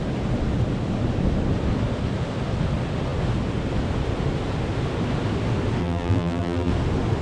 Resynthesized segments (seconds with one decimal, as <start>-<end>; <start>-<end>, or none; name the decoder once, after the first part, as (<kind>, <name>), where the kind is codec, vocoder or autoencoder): 5.8-6.7 (vocoder, BigVGAN v2)